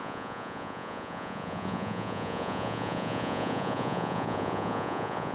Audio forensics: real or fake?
fake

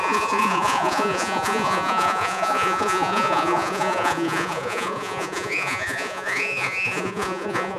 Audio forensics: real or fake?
fake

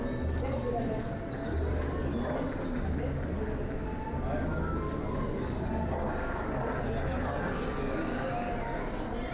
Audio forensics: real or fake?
real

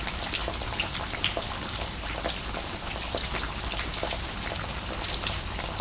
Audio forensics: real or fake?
real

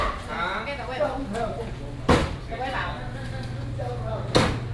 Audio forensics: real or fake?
real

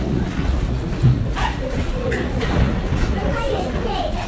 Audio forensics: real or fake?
fake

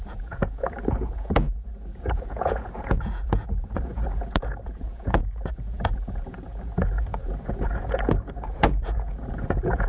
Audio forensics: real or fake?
fake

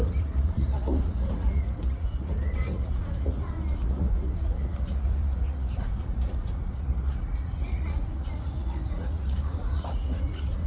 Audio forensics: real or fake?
fake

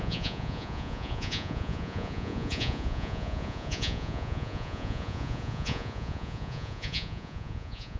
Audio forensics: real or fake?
fake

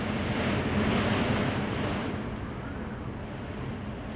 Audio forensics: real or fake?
real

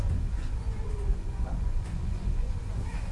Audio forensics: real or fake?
fake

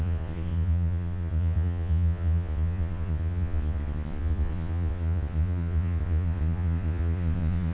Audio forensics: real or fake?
fake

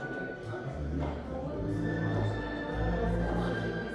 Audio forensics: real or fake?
real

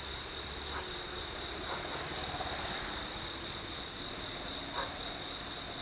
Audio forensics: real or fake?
real